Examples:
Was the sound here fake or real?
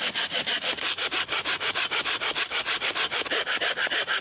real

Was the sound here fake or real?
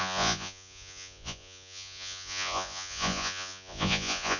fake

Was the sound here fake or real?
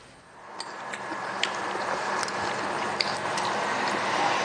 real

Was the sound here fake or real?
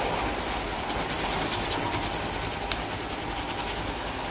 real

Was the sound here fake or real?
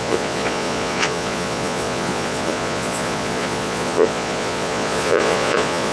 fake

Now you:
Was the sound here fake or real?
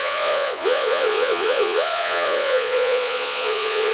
fake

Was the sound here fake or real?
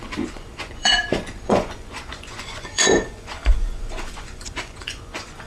fake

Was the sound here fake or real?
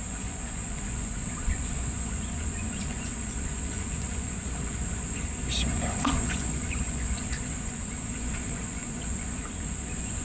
fake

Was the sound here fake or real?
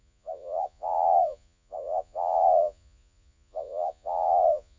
fake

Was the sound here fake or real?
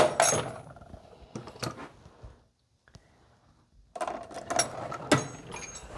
real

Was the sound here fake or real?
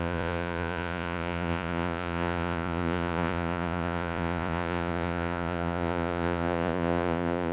fake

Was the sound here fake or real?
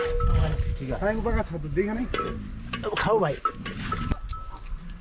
real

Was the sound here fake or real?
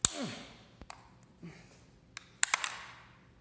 real